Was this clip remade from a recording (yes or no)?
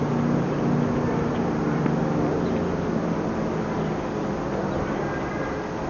no